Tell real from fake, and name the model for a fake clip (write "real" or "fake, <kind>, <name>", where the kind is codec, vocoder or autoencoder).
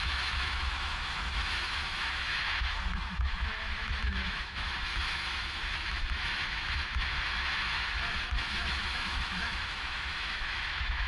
fake, autoencoder, DAC-VAE